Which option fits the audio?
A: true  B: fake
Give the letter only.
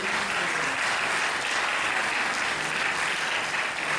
A